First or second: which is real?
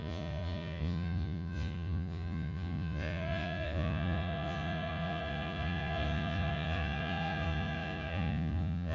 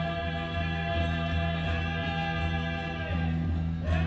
second